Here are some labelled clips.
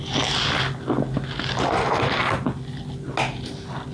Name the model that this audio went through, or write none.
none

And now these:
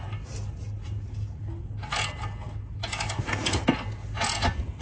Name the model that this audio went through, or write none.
none